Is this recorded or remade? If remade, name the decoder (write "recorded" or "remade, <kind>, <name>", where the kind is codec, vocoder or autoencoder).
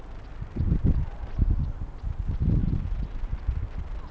recorded